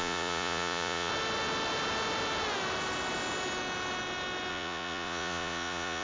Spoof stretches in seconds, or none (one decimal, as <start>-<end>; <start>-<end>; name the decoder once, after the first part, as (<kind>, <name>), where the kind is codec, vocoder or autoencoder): 0.0-1.1 (vocoder, Vocos); 4.5-6.0